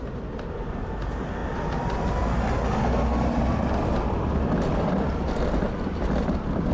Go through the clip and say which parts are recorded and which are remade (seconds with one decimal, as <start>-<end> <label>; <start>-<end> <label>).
0.0-6.7 recorded